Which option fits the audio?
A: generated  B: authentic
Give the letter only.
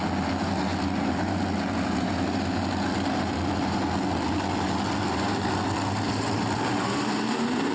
B